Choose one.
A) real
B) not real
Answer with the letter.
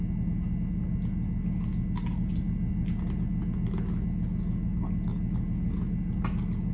A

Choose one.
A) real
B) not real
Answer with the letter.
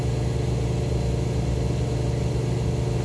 A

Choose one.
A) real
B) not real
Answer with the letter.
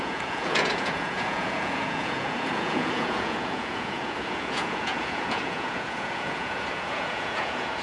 B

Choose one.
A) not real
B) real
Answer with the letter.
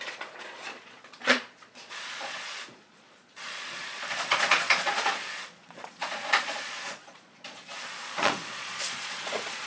A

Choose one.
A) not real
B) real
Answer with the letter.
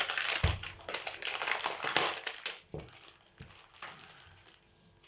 B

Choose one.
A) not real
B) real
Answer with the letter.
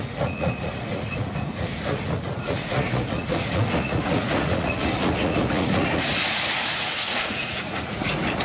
A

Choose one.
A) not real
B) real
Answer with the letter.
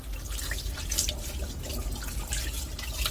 B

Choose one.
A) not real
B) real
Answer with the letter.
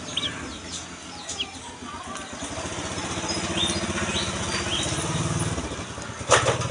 B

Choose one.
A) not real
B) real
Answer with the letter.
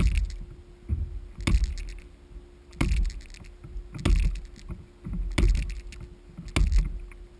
B